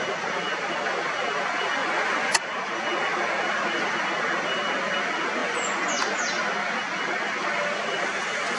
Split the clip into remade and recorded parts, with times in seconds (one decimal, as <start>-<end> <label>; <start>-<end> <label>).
0.0-1.8 recorded; 1.8-2.4 remade; 2.4-5.4 recorded; 5.4-6.0 remade; 6.0-8.6 recorded